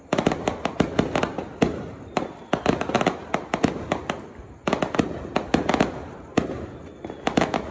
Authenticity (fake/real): real